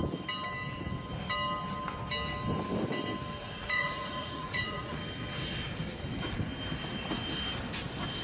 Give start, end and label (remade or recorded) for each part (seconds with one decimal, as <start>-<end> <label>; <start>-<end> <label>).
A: 0.0-3.4 recorded; 3.4-5.0 remade; 5.0-8.2 recorded